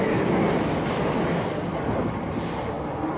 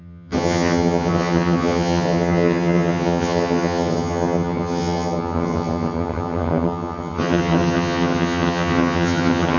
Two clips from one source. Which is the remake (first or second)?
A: second